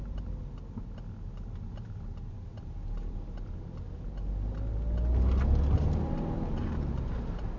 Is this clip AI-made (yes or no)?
no